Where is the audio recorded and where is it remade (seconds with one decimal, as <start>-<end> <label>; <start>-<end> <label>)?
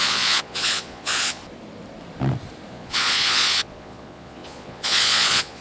0.0-1.4 remade; 1.4-2.7 recorded; 2.7-5.6 remade